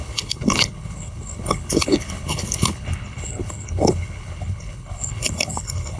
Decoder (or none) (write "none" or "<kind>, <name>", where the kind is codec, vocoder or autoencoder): codec, HILCodec